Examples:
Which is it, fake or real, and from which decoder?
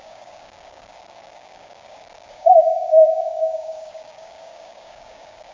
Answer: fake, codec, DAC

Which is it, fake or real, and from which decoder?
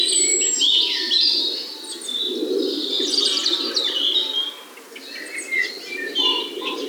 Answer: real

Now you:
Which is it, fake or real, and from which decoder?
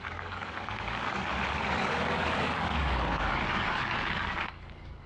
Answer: fake, codec, DAC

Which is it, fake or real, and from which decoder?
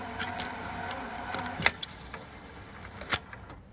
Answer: real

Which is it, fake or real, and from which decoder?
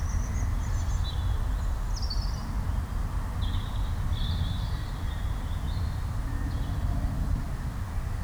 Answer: real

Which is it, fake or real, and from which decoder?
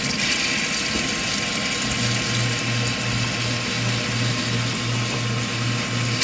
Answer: real